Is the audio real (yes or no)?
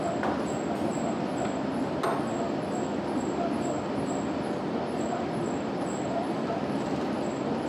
yes